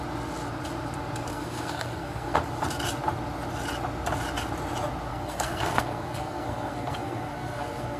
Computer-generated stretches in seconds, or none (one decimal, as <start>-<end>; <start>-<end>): 1.3-2.4; 5.1-8.0